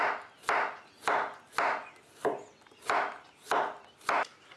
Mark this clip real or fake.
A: real